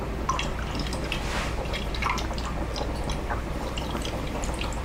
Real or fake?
real